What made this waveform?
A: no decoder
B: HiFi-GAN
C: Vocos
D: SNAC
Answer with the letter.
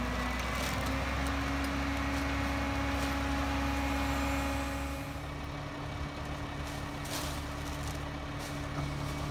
A